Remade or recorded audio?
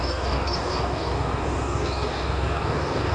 remade